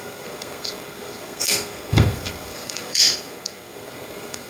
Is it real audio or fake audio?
fake